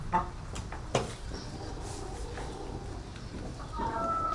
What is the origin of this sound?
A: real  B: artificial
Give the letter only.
B